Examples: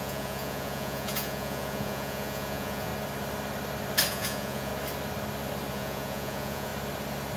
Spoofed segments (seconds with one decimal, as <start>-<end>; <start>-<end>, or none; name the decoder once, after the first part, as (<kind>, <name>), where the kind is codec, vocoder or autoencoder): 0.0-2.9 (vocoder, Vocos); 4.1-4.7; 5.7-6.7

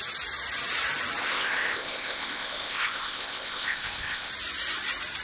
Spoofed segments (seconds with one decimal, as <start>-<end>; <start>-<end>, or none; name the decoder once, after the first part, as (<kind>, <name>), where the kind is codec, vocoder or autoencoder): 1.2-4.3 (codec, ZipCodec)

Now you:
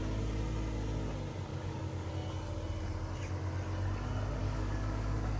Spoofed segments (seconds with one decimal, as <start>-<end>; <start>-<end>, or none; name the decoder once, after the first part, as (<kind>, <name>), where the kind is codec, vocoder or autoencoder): 1.5-2.1 (codec, DAC); 4.4-5.4

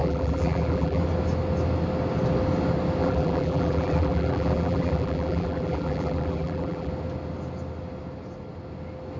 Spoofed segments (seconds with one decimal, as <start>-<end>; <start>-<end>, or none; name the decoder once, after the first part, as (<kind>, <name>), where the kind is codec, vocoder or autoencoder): 0.0-1.0 (vocoder, BigVGAN v2); 3.0-6.9

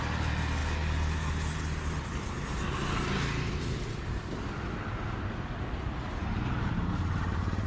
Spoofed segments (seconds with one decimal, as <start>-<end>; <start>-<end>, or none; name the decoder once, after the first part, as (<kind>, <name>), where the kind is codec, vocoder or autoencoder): 6.2-7.7 (vocoder, BigVGAN v2)